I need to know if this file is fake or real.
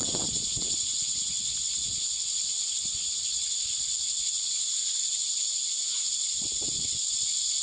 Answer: fake